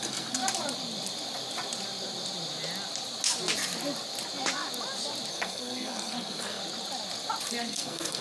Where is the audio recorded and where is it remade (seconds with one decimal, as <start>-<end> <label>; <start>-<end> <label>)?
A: 0.0-0.4 remade; 0.4-5.3 recorded; 5.3-6.6 remade; 6.6-7.6 recorded; 7.6-8.2 remade